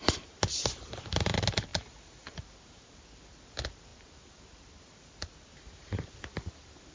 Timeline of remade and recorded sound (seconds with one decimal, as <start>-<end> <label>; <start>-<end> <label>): 0.0-1.7 recorded; 1.7-2.4 remade; 2.4-6.9 recorded